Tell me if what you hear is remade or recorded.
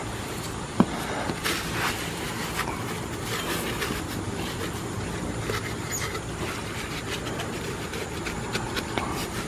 recorded